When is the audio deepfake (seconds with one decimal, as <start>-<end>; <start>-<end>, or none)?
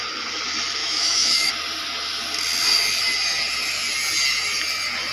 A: 0.8-1.5